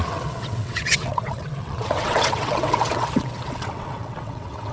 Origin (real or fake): fake